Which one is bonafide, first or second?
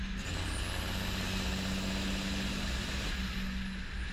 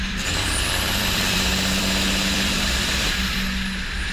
first